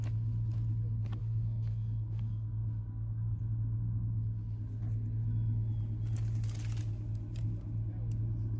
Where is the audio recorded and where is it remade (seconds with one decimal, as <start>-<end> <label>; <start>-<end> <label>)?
0.0-1.2 recorded; 1.2-3.4 remade; 3.4-8.6 recorded